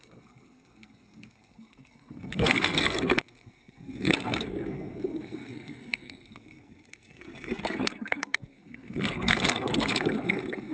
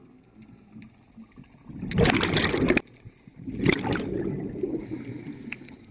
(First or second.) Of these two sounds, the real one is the second